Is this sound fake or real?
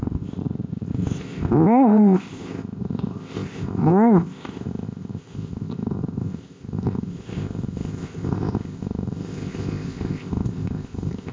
fake